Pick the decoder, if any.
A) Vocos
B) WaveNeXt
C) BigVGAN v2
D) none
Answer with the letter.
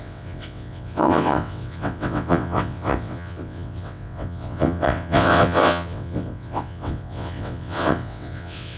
B